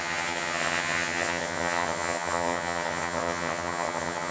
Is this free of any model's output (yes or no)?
no